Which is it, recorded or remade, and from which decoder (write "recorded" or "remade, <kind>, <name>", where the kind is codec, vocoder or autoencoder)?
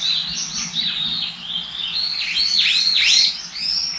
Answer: recorded